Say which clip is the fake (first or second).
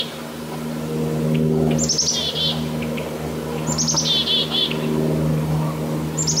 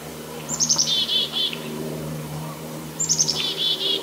second